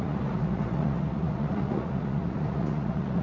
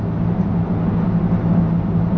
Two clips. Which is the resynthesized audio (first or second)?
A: first